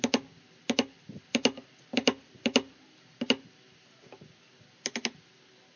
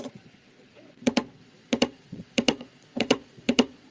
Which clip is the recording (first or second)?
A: first